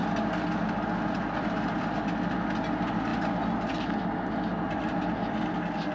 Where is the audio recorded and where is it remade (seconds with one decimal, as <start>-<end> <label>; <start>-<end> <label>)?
0.0-5.9 recorded